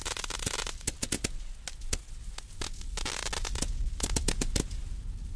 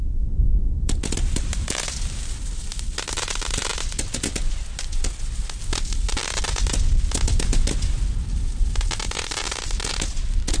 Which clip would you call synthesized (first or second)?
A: second